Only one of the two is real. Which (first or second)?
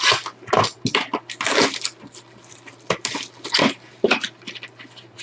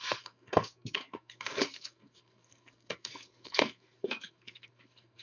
first